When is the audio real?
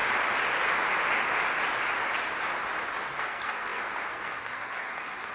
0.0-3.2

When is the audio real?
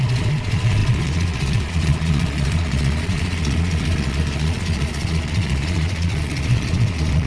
none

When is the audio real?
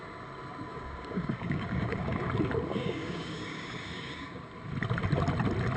0.0-0.7; 2.3-2.7; 4.5-5.8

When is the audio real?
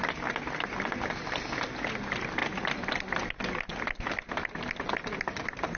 0.0-5.8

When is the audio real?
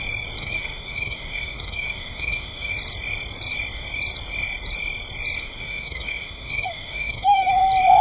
0.0-0.4; 2.7-5.4; 7.5-8.0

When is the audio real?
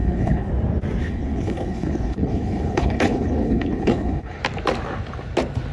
0.5-1.0; 4.4-5.7